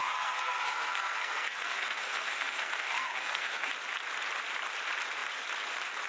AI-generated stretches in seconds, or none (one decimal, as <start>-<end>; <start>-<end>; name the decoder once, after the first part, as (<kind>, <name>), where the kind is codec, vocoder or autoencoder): 0.0-3.7 (codec, SNAC)